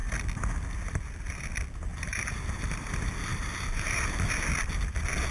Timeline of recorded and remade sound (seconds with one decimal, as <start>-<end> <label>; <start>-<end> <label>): 0.0-1.9 recorded; 1.9-2.9 remade; 2.9-3.3 recorded; 3.3-4.2 remade; 4.2-5.3 recorded